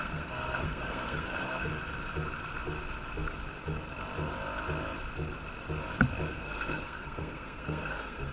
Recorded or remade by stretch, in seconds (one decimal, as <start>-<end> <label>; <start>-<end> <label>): 0.0-1.7 remade; 1.7-6.3 recorded; 6.3-8.3 remade